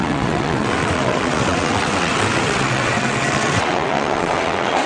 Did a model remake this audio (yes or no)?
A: yes